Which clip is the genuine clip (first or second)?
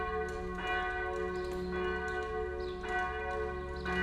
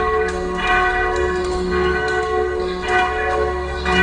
first